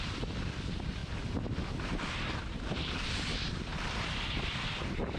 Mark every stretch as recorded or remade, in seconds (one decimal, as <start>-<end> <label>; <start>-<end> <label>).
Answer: 0.0-1.0 remade; 1.0-1.8 recorded; 1.8-3.7 remade; 3.7-4.4 recorded; 4.4-5.2 remade